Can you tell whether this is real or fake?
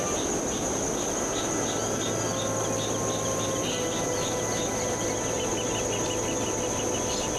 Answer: real